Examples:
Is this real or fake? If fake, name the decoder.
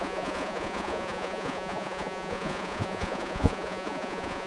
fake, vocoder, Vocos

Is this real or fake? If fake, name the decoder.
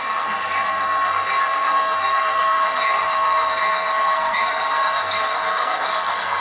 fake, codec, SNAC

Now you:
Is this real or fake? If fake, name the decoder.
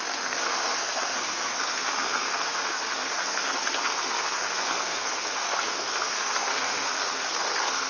fake, codec, SNAC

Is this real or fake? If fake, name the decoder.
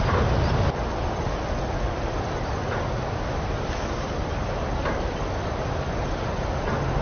real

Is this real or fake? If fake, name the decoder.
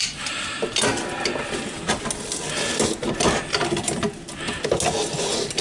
real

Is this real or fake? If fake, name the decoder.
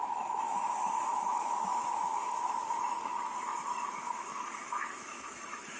fake, autoencoder, DAC-VAE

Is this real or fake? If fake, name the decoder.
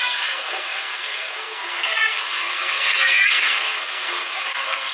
fake, codec, SNAC